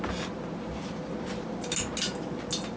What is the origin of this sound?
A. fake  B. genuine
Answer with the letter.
B